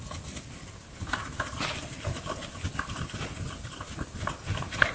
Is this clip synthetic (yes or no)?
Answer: no